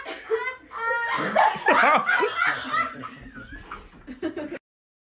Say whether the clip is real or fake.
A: real